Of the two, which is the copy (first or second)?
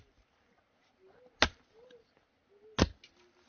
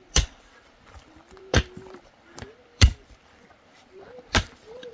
second